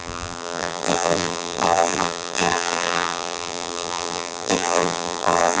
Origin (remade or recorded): remade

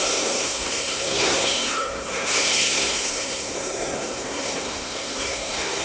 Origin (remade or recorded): remade